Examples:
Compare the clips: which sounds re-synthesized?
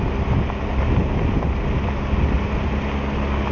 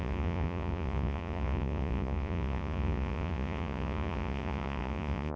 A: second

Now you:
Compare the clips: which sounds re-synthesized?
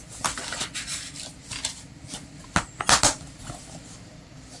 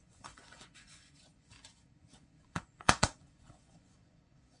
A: second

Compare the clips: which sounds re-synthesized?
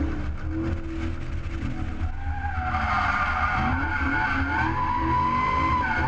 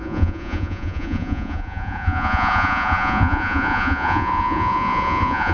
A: second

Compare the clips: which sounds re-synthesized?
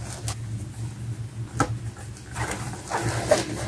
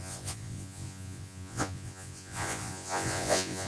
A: second